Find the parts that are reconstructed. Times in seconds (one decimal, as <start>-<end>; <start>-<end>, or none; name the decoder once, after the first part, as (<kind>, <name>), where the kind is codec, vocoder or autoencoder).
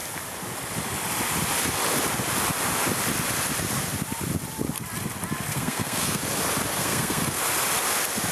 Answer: 5.5-6.2 (codec, SNAC); 6.7-7.4